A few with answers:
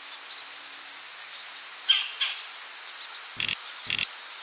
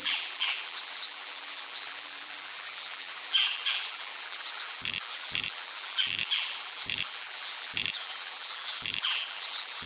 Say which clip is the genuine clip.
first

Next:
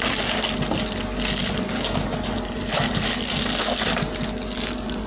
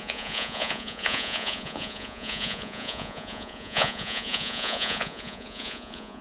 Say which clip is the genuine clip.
first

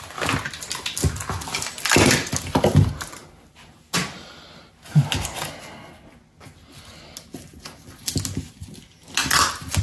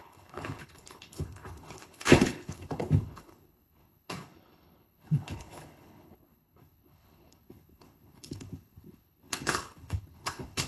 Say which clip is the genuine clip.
first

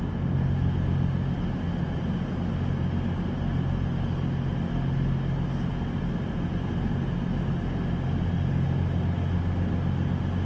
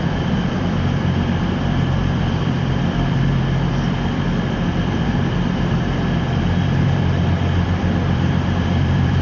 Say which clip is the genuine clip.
first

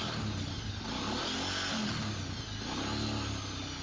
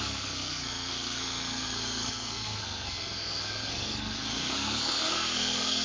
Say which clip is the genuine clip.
first